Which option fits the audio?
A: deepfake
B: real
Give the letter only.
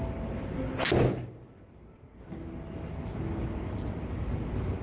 B